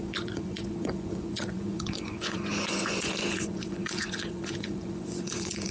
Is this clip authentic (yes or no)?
no